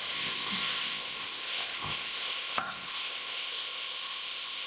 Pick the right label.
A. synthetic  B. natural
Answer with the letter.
A